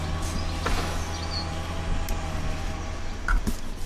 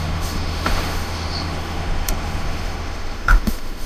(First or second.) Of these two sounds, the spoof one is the second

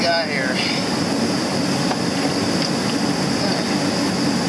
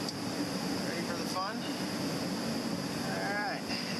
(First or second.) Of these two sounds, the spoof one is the second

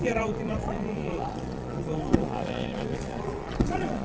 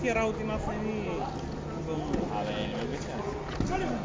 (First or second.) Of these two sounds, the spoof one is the first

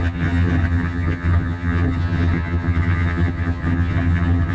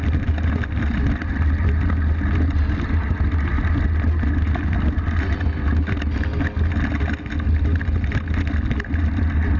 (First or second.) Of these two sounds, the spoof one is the first